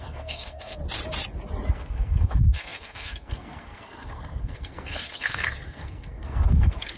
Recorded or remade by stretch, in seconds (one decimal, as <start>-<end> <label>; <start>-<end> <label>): 0.0-0.8 remade; 0.8-1.7 recorded; 1.7-7.0 remade